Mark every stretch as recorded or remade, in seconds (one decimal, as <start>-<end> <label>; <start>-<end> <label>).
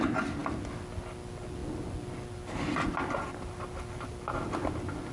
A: 0.0-5.1 recorded